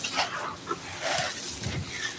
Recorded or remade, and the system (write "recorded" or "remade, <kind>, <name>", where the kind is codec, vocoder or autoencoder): recorded